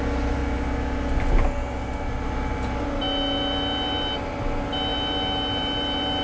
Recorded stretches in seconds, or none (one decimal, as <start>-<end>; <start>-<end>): 0.0-6.2